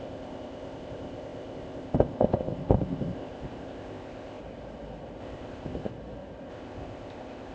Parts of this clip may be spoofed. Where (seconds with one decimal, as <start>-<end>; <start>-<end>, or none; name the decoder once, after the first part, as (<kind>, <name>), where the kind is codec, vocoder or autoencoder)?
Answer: 0.0-4.4 (codec, ZipCodec); 5.2-5.9; 6.5-7.5